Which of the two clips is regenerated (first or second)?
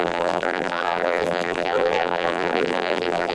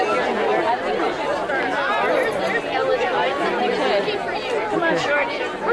first